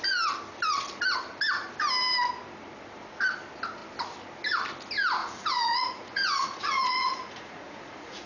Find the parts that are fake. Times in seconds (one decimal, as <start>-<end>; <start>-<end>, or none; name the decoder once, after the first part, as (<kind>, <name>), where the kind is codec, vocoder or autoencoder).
5.2-8.3 (vocoder, Vocos)